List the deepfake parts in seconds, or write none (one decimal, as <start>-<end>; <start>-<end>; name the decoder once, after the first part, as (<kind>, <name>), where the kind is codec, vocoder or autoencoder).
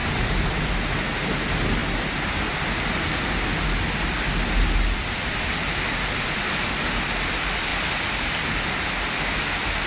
none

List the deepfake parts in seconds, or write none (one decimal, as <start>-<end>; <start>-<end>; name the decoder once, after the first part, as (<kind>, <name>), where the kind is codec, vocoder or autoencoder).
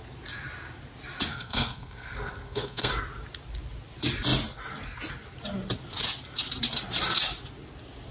1.3-2.9 (codec, SNAC)